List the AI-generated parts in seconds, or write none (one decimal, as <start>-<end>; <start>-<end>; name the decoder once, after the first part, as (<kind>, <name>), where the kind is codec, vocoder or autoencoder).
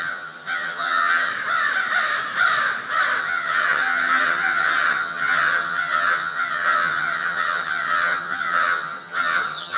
0.0-1.3 (vocoder, HiFi-GAN); 3.2-9.8